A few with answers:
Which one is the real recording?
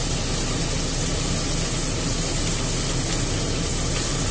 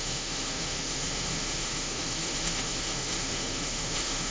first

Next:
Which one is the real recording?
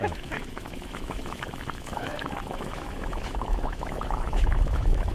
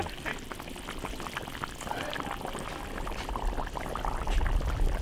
second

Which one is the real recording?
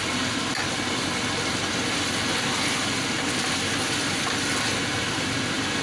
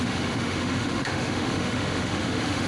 first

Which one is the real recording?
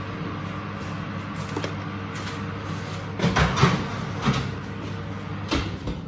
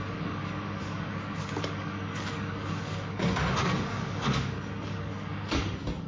first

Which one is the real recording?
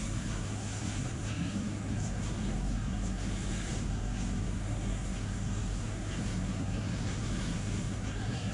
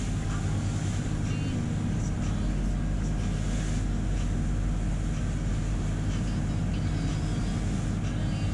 second